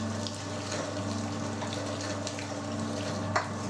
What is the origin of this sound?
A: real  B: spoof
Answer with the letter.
A